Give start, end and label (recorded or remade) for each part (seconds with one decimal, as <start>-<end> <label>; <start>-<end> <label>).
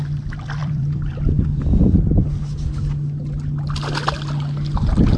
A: 0.0-0.6 recorded; 0.6-1.6 remade; 1.6-5.2 recorded